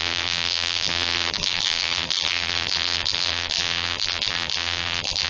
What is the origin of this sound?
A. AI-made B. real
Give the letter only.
A